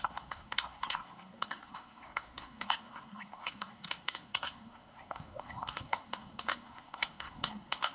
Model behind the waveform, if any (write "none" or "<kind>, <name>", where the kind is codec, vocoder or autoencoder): codec, SNAC